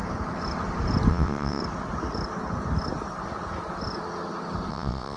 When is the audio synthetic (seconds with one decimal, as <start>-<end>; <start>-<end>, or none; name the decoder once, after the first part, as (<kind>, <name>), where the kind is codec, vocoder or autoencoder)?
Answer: 1.1-1.6 (vocoder, WaveNeXt); 4.7-5.2